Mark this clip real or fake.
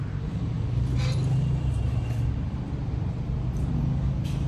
real